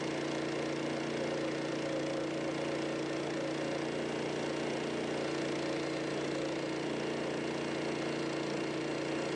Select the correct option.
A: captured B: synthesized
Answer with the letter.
A